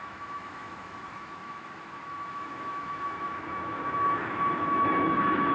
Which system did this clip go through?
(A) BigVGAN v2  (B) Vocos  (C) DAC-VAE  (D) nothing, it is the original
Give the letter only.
C